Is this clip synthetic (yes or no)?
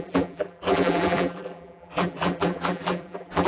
yes